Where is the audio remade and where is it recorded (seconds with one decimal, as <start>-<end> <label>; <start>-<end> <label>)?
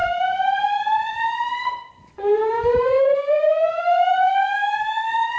0.0-5.4 remade